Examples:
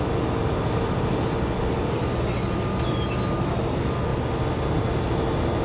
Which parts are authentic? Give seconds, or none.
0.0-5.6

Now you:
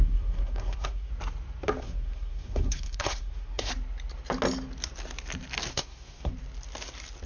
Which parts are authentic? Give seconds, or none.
1.1-1.8; 3.7-5.7; 6.3-7.3

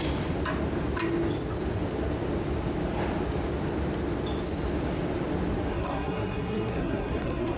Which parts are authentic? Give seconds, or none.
0.0-5.7